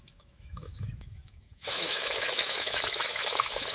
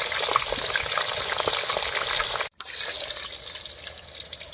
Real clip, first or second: second